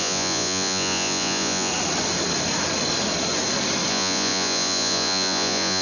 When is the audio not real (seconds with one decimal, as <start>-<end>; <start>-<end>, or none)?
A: 0.0-1.7; 3.9-5.8